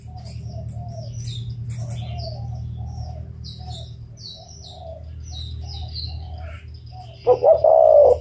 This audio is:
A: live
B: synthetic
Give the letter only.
A